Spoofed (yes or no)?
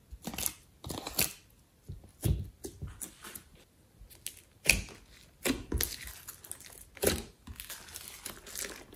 no